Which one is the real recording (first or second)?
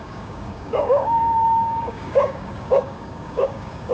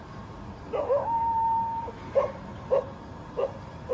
second